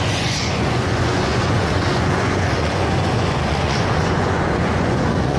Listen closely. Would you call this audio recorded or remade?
remade